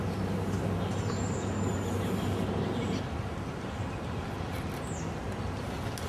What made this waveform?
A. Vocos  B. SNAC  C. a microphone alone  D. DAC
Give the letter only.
C